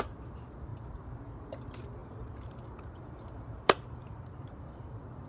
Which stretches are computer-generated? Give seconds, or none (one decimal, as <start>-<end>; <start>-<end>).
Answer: 0.7-1.2; 2.0-5.3

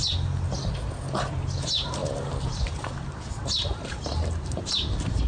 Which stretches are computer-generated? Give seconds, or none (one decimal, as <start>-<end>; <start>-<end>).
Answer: 1.6-5.3

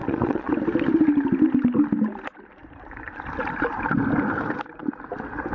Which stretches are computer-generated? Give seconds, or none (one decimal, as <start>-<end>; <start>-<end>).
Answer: 0.0-0.5

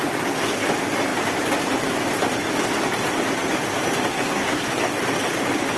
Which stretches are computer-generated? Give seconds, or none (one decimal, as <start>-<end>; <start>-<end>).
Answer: 4.1-4.6